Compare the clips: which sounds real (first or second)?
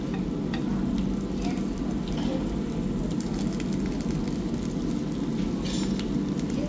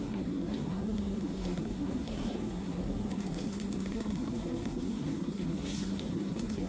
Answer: first